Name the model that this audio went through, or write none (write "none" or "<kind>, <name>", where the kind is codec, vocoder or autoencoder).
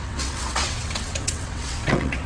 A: vocoder, WaveNeXt